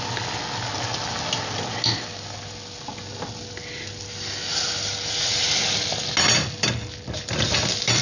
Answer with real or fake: real